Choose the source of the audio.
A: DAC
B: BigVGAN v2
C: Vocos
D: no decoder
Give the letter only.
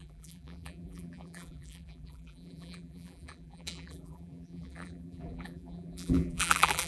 B